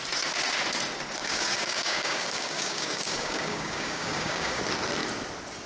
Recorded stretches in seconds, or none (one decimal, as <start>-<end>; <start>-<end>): 0.0-1.2; 4.6-5.7

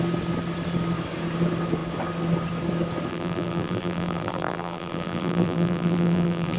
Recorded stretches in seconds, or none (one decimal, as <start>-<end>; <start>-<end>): 0.0-3.1

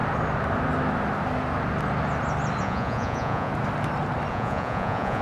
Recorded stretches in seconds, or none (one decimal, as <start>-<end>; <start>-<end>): 0.0-2.6; 3.5-4.3